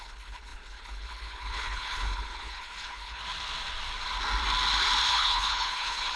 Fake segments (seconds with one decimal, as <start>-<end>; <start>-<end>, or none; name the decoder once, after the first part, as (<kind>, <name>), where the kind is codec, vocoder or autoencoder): 0.0-3.2 (codec, HILCodec); 5.1-6.2